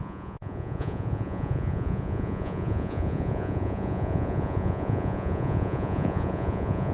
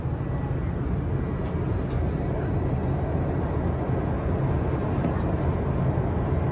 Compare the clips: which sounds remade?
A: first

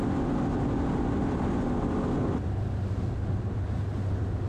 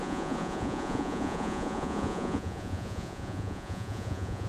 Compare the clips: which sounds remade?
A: second